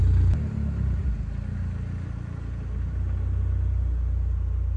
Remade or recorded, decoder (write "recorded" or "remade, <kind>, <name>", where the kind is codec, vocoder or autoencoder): recorded